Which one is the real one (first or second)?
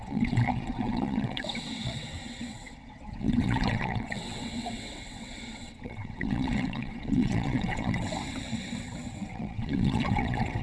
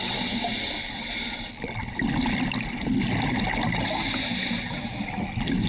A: second